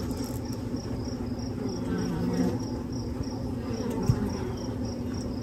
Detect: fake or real real